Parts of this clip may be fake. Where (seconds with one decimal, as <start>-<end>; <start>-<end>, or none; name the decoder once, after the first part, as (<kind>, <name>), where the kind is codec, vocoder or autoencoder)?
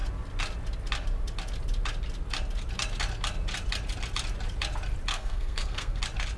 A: 5.1-6.0 (codec, SNAC)